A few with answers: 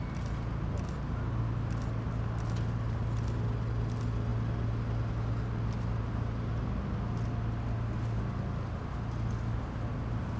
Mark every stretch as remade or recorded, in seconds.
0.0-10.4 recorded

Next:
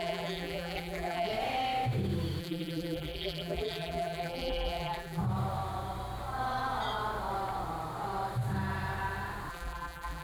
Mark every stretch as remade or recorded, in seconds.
0.0-1.3 remade; 1.3-2.4 recorded; 2.4-5.2 remade; 5.2-9.5 recorded; 9.5-10.2 remade

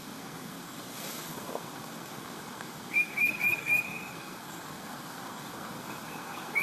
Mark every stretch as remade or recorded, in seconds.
0.0-6.6 remade

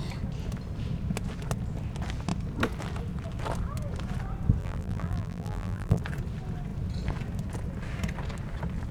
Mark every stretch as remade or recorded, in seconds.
0.0-4.6 recorded; 4.6-6.0 remade; 6.0-8.9 recorded

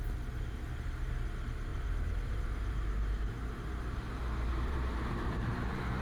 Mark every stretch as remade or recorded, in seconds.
0.0-1.7 recorded; 1.7-4.0 remade; 4.0-4.5 recorded; 4.5-5.4 remade; 5.4-6.0 recorded

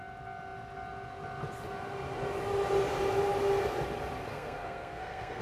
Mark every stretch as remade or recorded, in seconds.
0.0-4.3 recorded; 4.3-5.4 remade